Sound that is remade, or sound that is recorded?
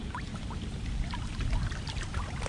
remade